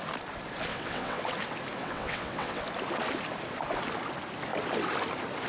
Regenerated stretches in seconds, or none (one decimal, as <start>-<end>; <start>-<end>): 0.7-1.2; 1.8-2.6